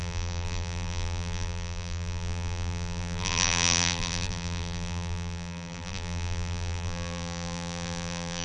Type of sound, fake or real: fake